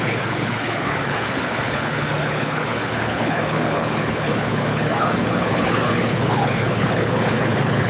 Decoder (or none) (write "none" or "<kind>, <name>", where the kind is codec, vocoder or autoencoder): codec, HILCodec